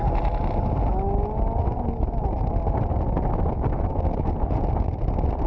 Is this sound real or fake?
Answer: real